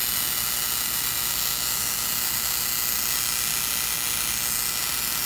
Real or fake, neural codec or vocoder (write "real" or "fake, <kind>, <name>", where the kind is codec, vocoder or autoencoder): real